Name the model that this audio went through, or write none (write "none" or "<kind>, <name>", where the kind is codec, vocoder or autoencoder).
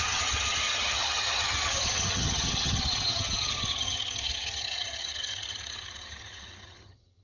vocoder, HiFi-GAN